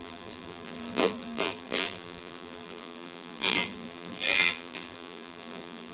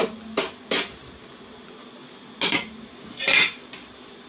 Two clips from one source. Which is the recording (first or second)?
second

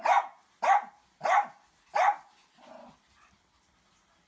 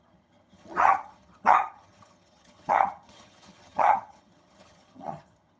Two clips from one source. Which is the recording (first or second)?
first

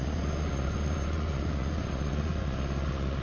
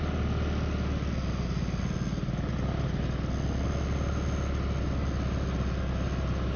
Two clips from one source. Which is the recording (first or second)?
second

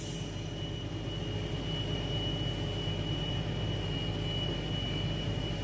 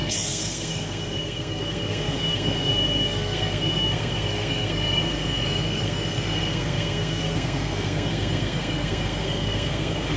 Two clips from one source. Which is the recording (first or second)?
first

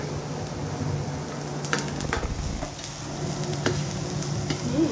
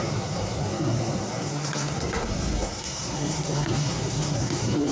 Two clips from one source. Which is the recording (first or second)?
first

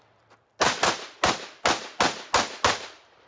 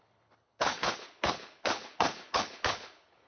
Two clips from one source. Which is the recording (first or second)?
first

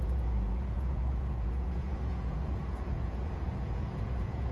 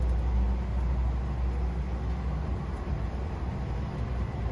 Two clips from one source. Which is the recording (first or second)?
second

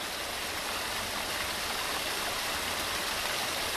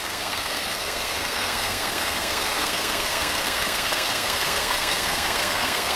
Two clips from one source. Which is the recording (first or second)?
first